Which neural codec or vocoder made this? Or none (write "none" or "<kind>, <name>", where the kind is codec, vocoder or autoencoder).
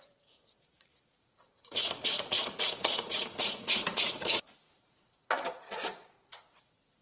vocoder, Vocos